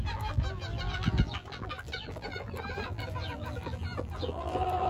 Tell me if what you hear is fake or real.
fake